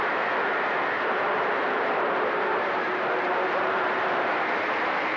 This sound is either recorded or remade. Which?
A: remade